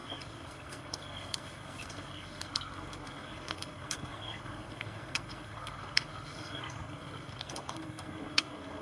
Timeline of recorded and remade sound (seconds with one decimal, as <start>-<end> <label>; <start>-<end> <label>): 0.0-8.8 remade